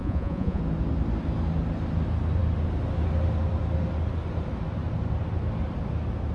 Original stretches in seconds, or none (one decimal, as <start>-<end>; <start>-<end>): 0.6-6.3